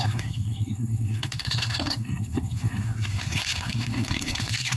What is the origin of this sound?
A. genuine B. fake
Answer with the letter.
B